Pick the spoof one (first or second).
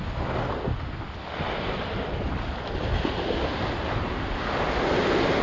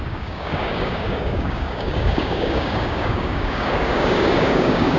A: second